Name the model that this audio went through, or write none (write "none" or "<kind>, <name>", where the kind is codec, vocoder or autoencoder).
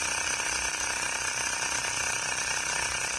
vocoder, BigVGAN v2